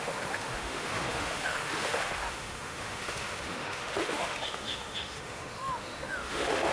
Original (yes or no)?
no